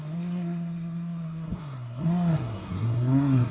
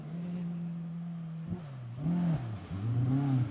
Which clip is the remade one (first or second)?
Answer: first